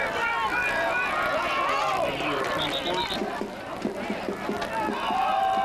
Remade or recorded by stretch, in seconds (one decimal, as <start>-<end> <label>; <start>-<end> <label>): 0.0-0.6 recorded; 0.6-1.8 remade; 1.8-5.6 recorded